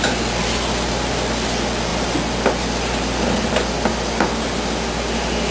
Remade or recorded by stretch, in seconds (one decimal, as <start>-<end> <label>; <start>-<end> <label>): 0.0-5.5 recorded